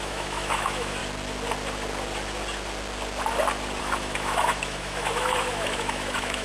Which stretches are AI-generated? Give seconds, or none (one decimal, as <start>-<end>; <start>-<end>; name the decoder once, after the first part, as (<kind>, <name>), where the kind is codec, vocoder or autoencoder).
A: 0.0-1.0 (autoencoder, DAC-VAE); 3.8-6.4